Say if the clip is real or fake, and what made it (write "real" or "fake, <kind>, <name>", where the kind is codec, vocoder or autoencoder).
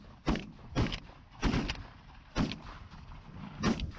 real